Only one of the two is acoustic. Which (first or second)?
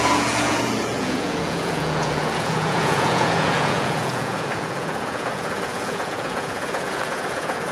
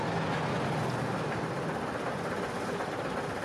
second